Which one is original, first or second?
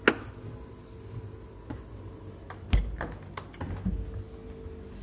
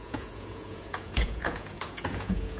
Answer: first